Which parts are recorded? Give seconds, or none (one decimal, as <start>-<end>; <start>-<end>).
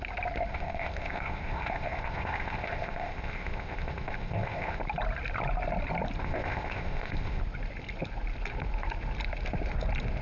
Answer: 0.0-0.5; 4.8-6.2; 7.4-10.2